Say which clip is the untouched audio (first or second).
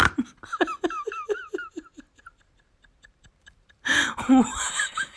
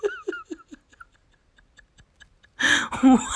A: second